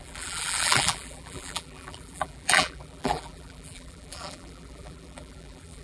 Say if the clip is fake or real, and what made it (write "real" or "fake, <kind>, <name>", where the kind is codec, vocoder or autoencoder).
fake, vocoder, BigVGAN v2